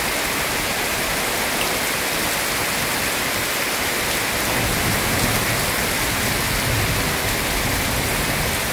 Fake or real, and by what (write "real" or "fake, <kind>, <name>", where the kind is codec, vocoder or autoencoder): real